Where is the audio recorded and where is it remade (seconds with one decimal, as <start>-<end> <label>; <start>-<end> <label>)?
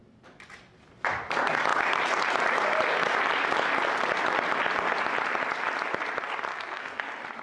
0.0-6.5 recorded; 6.5-7.0 remade; 7.0-7.4 recorded